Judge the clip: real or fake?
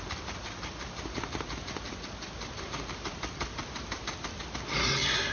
real